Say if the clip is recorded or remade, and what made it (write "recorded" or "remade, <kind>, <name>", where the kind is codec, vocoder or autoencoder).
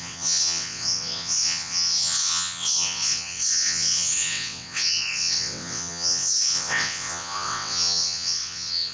remade, vocoder, WaveNeXt